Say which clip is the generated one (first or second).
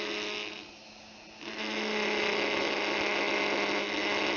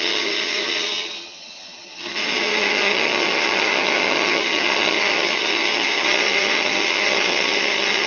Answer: second